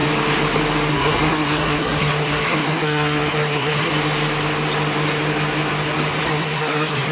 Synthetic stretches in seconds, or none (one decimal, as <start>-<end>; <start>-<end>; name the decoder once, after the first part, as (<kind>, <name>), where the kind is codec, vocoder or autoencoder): 0.9-3.9 (codec, SNAC); 6.2-7.1